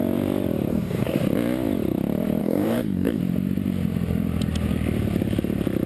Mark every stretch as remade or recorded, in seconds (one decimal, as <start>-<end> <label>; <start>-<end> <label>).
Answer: 0.0-0.7 recorded; 0.7-1.2 remade; 1.2-2.4 recorded; 2.4-3.2 remade; 3.2-5.9 recorded